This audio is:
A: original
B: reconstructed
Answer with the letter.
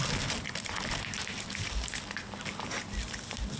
A